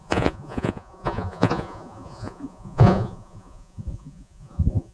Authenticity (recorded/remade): remade